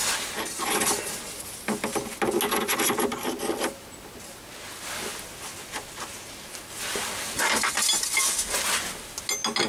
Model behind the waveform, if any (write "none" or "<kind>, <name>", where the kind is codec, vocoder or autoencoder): none